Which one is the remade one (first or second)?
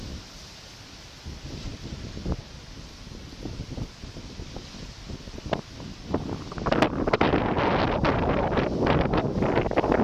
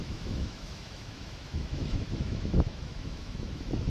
second